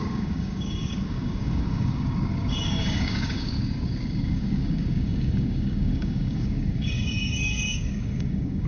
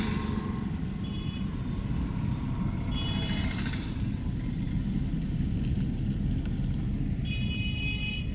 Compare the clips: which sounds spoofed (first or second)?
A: first